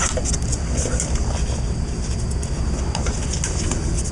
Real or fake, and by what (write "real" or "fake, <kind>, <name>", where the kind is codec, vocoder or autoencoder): real